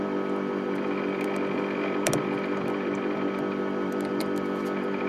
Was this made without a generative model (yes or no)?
no